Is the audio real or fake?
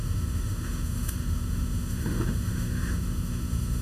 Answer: fake